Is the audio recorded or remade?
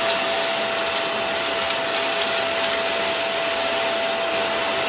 recorded